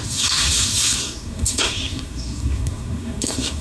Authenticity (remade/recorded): remade